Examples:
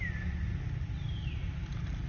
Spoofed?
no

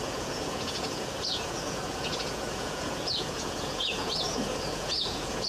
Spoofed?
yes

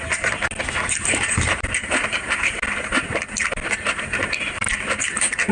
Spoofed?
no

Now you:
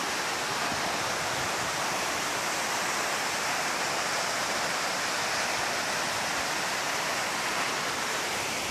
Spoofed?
no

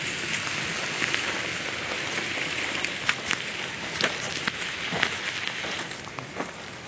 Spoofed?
no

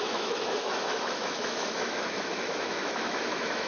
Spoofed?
yes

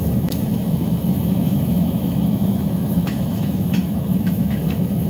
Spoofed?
yes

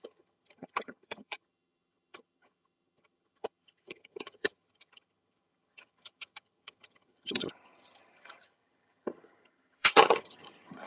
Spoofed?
yes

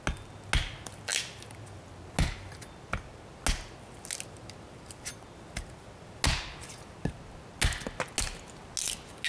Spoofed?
no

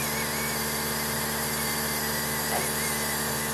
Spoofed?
no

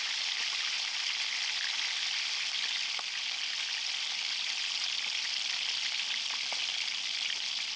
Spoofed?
no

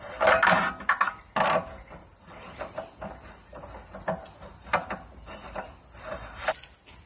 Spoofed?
no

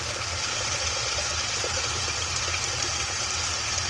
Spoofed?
yes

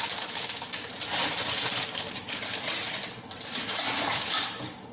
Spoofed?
yes